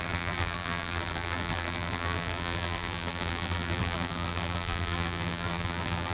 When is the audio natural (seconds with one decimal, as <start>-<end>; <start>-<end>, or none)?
none